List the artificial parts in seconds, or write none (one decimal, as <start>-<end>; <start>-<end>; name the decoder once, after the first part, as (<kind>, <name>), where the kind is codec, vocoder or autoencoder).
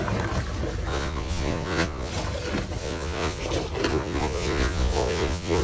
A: 0.9-2.1 (vocoder, Vocos); 2.8-3.4; 3.9-5.6